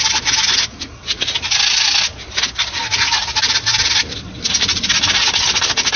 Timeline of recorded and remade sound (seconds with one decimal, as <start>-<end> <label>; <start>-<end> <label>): 0.0-6.0 recorded